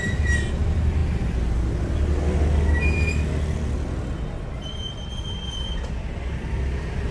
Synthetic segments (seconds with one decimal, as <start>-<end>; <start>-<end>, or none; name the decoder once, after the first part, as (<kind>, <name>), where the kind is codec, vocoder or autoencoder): none